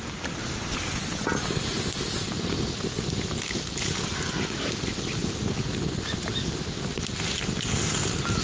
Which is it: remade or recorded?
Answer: recorded